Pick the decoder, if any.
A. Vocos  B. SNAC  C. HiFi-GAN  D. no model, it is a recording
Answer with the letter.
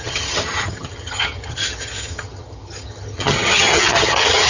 C